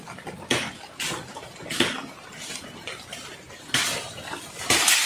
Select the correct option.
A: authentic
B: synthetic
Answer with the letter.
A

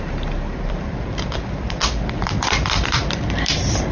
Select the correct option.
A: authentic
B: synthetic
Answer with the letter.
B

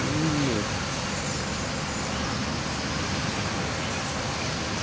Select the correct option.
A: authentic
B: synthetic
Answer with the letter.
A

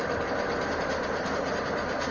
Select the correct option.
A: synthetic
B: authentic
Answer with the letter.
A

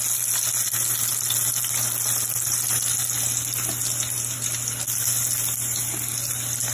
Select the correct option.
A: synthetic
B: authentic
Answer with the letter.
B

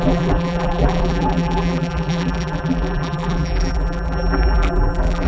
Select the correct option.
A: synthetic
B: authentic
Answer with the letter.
A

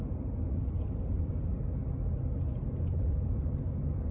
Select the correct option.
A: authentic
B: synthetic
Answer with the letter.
A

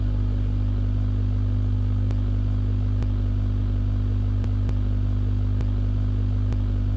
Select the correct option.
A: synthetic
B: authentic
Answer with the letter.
B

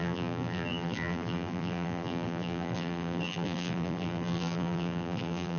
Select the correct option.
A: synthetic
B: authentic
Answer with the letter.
A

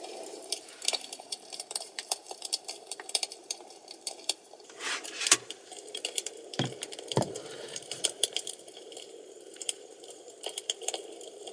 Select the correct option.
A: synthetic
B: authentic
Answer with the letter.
A